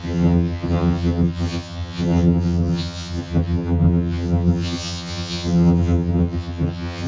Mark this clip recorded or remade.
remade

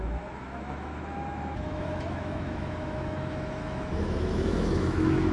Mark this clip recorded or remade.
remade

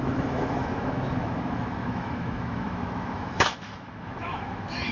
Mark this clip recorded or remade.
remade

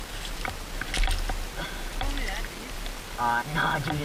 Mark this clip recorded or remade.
recorded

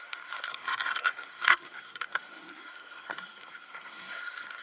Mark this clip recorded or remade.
remade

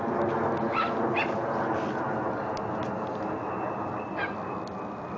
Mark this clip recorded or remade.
recorded